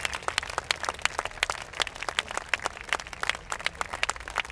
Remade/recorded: recorded